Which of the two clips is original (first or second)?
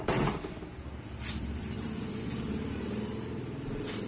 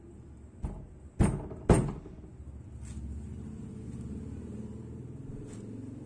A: second